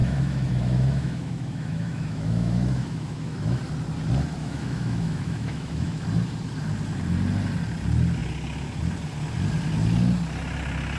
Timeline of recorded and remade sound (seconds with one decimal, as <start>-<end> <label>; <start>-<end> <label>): 0.0-3.6 remade; 3.6-4.4 recorded; 4.4-6.0 remade; 6.0-11.0 recorded